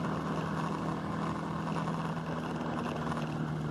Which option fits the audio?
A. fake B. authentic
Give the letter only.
B